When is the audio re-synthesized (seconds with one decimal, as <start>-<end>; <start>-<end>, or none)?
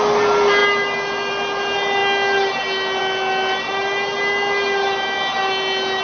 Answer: none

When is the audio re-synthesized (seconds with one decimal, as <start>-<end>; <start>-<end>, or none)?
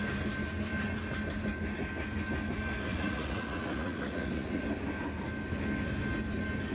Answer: 2.9-4.6